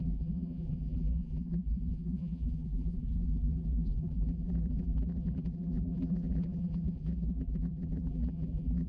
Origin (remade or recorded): remade